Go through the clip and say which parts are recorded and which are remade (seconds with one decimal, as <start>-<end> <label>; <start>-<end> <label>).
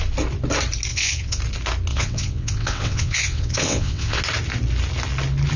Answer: 0.0-0.9 recorded; 0.9-1.4 remade; 1.4-1.9 recorded; 1.9-4.2 remade; 4.2-5.6 recorded